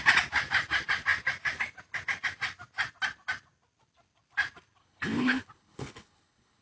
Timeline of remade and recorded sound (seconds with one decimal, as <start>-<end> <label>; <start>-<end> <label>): 0.0-4.8 recorded; 4.8-6.6 remade